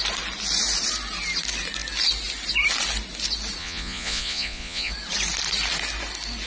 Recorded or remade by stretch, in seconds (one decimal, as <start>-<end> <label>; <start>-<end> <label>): 0.0-3.6 recorded; 3.6-4.9 remade; 4.9-6.5 recorded